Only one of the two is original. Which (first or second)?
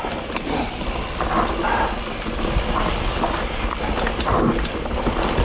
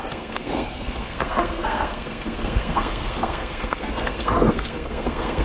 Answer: first